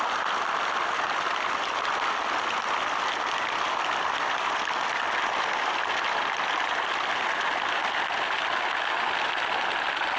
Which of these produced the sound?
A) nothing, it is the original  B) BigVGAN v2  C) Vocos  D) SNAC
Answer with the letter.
A